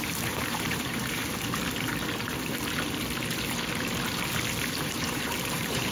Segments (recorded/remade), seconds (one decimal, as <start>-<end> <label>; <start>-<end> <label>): 0.0-1.2 remade; 1.2-4.7 recorded; 4.7-5.9 remade